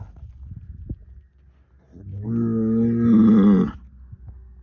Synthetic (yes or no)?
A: no